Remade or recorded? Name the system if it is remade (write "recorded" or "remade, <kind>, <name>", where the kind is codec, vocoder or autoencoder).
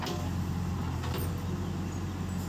recorded